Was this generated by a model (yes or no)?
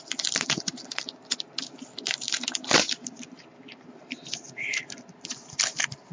no